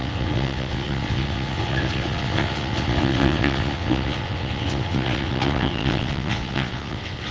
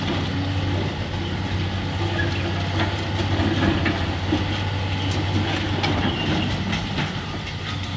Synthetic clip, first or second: first